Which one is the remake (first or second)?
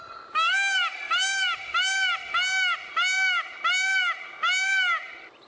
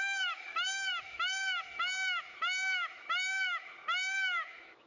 second